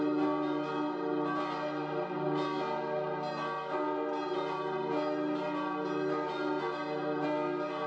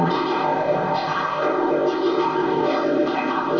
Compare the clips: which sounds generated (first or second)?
second